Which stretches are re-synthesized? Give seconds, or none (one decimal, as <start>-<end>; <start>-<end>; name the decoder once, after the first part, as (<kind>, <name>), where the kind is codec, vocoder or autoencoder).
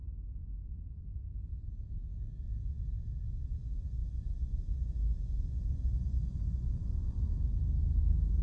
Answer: 4.0-7.5 (vocoder, Vocos)